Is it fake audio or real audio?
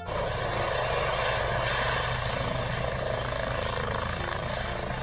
real